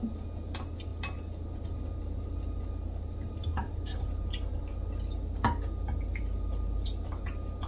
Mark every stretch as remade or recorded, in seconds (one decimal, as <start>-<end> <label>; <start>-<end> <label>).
0.0-7.7 recorded